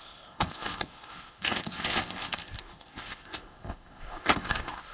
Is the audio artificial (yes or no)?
yes